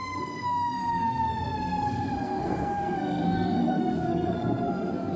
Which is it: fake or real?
fake